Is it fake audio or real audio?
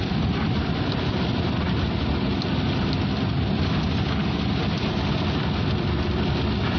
real